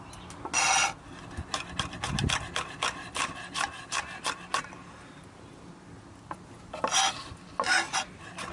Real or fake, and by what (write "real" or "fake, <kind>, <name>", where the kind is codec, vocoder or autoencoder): real